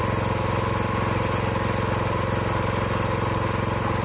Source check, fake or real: real